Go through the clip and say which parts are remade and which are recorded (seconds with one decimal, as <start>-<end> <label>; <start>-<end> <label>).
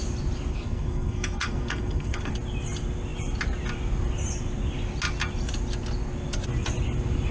0.0-0.5 recorded; 0.5-2.3 remade; 2.3-7.3 recorded